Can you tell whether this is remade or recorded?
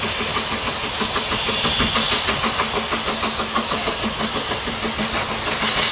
recorded